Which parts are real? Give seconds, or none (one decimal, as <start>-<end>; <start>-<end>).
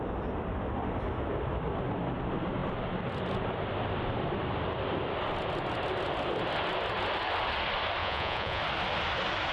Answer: 0.0-8.0; 8.6-9.5